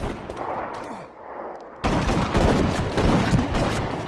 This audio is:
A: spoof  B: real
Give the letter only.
B